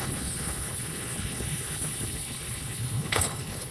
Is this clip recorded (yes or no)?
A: no